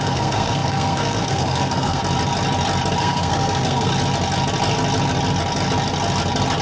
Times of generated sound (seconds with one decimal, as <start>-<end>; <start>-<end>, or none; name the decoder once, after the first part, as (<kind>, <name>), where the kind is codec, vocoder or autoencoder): 0.0-2.0 (codec, SNAC); 3.0-3.9